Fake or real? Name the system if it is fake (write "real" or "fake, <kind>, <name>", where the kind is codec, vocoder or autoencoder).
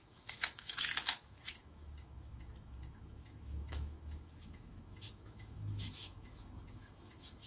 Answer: fake, autoencoder, DAC-VAE